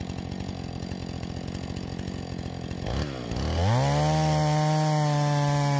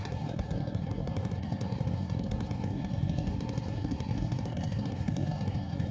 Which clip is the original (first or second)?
first